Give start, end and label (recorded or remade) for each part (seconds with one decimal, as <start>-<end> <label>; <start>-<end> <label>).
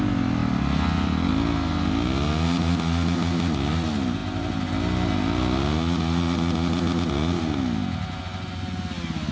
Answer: 0.0-9.3 recorded